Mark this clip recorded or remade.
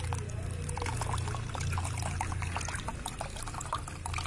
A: recorded